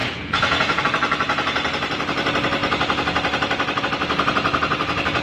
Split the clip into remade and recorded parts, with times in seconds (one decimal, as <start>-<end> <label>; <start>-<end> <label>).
0.0-0.8 remade; 0.8-5.2 recorded